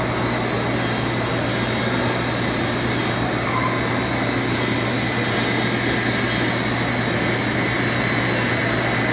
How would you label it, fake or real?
real